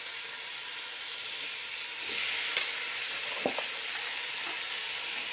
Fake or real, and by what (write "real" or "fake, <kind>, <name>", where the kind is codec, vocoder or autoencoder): real